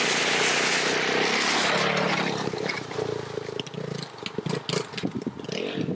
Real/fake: real